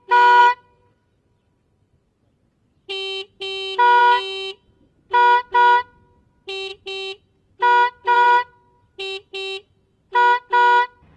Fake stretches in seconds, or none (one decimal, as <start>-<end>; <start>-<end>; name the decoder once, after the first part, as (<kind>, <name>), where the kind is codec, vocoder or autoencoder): 0.4-2.1 (vocoder, BigVGAN v2); 8.0-8.5